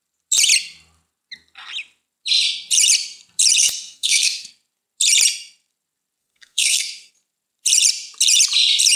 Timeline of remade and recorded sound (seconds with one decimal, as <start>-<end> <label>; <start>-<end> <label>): 0.0-3.6 recorded; 3.6-4.5 remade; 4.5-6.2 recorded; 6.2-7.1 remade; 7.1-9.0 recorded